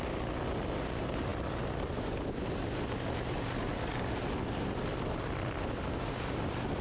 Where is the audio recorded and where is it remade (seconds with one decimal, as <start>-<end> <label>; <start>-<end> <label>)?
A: 0.0-6.8 recorded